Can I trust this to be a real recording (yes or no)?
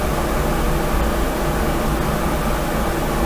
yes